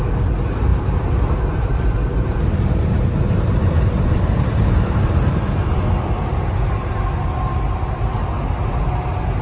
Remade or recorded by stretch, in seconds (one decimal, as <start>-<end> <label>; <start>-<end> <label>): 0.0-0.7 recorded; 0.7-5.8 remade; 5.8-9.4 recorded